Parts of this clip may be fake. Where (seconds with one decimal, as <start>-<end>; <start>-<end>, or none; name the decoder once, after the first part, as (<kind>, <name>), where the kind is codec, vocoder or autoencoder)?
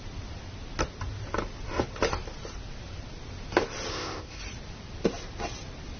3.9-4.4 (codec, ZipCodec)